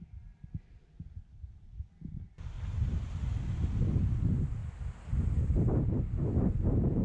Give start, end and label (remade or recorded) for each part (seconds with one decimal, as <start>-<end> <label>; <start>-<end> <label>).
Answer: 0.0-7.0 recorded